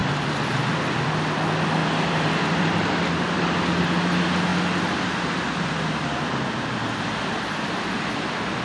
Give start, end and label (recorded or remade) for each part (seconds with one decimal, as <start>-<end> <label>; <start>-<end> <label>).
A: 0.0-0.6 remade; 0.6-1.8 recorded; 1.8-3.4 remade; 3.4-8.6 recorded